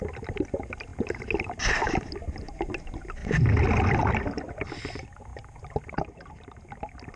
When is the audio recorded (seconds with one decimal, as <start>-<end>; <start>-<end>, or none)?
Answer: 0.0-3.2; 4.8-7.2